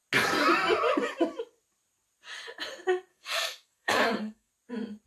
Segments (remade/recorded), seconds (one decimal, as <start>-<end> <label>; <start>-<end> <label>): 0.0-3.1 recorded; 3.1-4.5 remade; 4.5-5.1 recorded

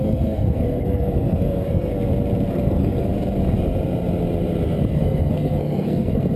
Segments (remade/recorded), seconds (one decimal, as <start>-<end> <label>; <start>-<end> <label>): 0.0-1.9 remade; 1.9-2.5 recorded; 2.5-3.1 remade; 3.1-4.9 recorded; 4.9-6.4 remade

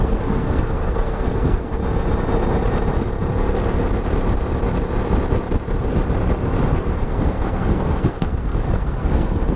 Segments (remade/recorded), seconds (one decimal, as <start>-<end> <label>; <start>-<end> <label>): 0.0-1.8 remade; 1.8-6.7 recorded; 6.7-9.6 remade

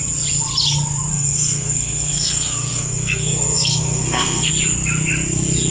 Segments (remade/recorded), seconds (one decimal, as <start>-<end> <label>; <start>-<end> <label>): 0.0-1.1 recorded; 1.1-4.5 remade; 4.5-5.7 recorded

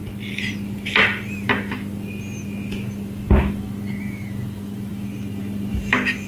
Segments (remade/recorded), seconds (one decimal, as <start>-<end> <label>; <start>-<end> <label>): 0.0-6.3 recorded